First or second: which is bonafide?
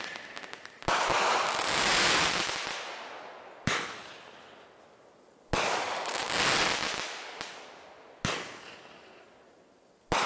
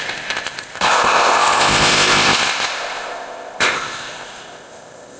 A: first